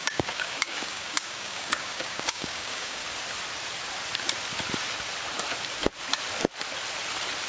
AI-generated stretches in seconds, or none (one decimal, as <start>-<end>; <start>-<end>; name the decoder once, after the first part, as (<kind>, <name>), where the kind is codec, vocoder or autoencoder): 0.0-3.0 (codec, DAC)